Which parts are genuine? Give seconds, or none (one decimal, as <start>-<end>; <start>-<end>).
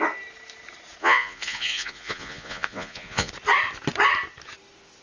0.0-1.0; 3.3-5.0